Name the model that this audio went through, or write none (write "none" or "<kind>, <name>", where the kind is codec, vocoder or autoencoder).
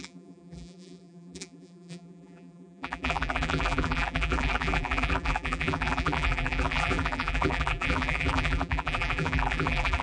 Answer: vocoder, BigVGAN v2